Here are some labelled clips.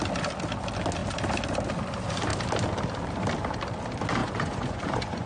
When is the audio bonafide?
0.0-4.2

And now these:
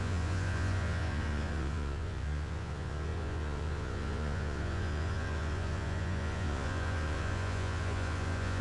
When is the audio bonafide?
none

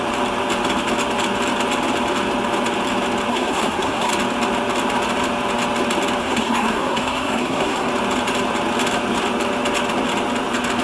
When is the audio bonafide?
0.0-3.3; 4.1-6.2; 7.9-10.8